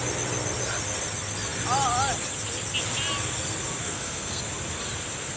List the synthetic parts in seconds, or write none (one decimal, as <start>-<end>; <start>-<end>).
3.8-4.4